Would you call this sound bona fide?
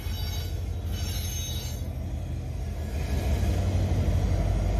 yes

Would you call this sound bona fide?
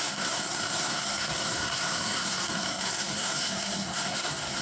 no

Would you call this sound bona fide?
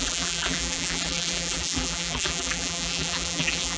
no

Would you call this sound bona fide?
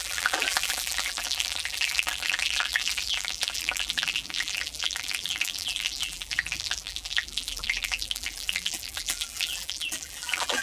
no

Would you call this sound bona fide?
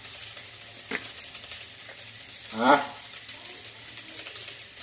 no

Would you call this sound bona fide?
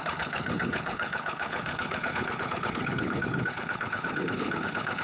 no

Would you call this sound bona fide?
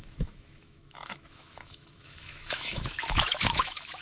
no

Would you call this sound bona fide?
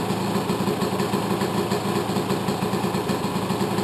yes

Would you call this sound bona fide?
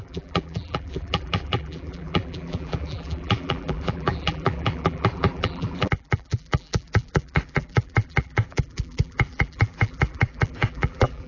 no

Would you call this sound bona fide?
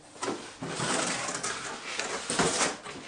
yes